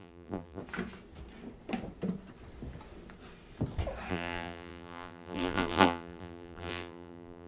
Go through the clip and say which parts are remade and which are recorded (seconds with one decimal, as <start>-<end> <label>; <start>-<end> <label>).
0.0-0.6 remade; 0.6-4.1 recorded; 4.1-7.5 remade